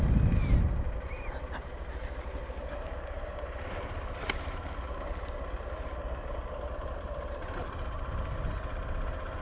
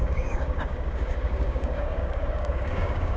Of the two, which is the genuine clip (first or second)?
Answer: first